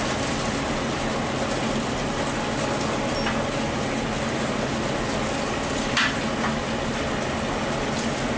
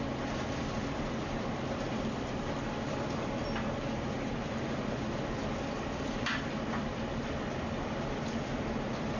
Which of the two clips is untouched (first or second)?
first